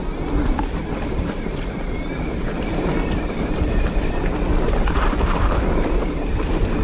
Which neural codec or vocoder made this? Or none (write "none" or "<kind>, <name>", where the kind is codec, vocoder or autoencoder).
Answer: none